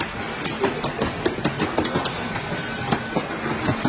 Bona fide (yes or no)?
yes